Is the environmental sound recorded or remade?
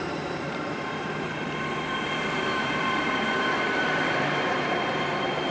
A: remade